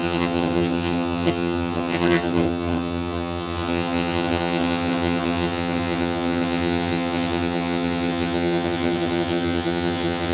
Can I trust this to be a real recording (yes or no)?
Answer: no